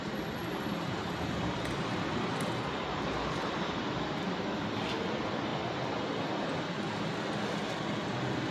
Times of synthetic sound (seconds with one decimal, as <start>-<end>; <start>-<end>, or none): 0.4-3.6